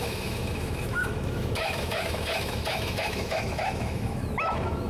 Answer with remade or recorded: remade